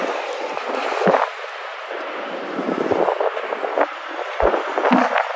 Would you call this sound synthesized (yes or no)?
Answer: no